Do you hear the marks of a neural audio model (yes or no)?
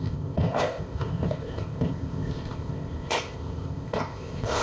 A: yes